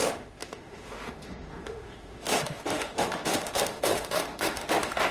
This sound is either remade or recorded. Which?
remade